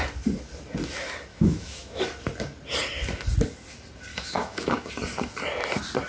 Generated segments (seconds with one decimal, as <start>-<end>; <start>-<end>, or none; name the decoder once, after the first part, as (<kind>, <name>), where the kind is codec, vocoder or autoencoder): 1.3-2.0 (autoencoder, DAC-VAE); 4.1-4.9